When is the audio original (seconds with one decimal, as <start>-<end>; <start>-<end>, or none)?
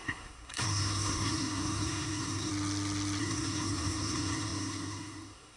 2.5-3.2